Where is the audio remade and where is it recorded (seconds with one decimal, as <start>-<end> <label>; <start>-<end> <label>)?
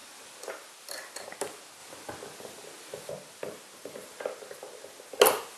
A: 0.0-5.6 recorded